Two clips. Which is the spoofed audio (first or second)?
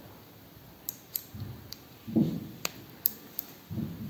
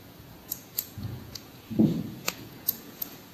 second